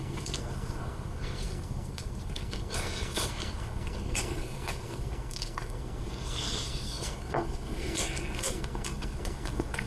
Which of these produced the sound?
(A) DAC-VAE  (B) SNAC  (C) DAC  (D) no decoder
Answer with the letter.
B